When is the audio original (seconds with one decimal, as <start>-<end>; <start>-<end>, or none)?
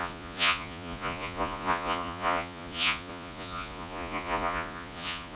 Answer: none